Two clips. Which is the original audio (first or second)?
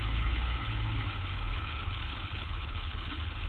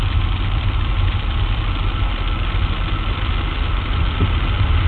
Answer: second